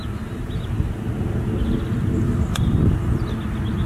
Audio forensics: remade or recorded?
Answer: recorded